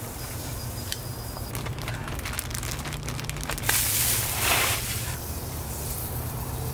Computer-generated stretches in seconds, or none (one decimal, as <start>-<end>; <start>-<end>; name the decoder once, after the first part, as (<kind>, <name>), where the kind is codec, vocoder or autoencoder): 0.0-2.0 (vocoder, BigVGAN v2); 4.2-6.7